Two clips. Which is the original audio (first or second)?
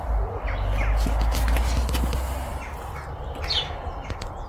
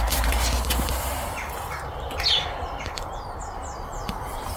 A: first